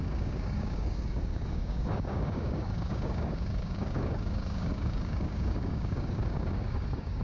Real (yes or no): no